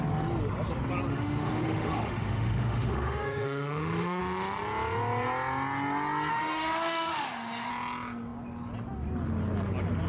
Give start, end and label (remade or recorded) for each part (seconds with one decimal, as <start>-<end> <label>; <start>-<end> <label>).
0.0-1.1 recorded; 1.1-4.2 remade; 4.2-6.3 recorded; 6.3-7.7 remade; 7.7-10.1 recorded